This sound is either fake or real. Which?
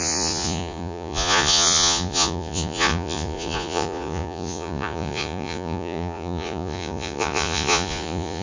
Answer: fake